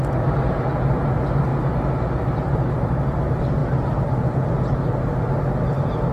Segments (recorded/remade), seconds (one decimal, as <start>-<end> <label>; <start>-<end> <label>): 0.0-1.5 recorded; 1.5-2.7 remade; 2.7-6.1 recorded